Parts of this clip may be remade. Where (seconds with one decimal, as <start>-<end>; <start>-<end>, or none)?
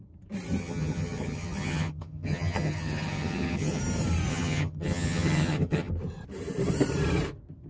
0.6-3.8; 4.3-5.9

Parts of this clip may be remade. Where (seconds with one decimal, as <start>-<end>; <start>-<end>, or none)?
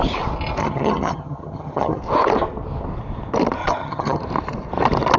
0.6-2.0; 3.6-4.2